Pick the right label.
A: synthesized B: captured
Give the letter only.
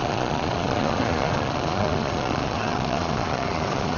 A